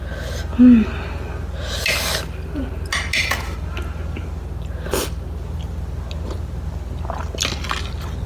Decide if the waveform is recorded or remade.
recorded